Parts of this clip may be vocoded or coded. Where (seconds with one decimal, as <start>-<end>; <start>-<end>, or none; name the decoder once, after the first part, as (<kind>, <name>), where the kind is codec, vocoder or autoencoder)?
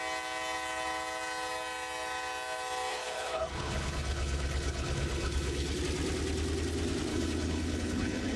2.9-5.8 (codec, HILCodec); 7.1-8.4